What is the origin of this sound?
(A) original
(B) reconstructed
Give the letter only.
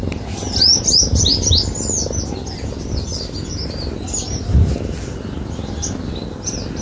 A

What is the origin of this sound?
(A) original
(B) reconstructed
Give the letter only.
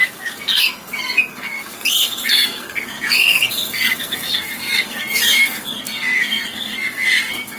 B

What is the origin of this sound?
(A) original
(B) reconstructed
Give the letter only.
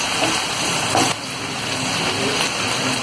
A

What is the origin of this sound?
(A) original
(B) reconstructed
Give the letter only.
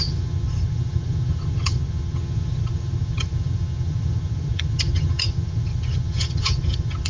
B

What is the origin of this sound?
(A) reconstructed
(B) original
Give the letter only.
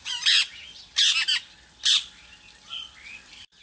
B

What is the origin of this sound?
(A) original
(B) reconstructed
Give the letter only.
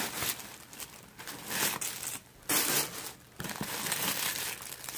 A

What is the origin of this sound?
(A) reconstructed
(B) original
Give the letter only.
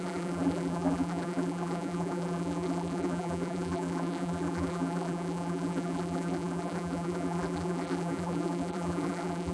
A